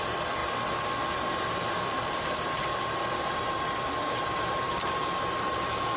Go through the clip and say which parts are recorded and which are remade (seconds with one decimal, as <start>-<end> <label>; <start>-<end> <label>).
0.0-0.4 remade; 0.4-1.4 recorded; 1.4-6.0 remade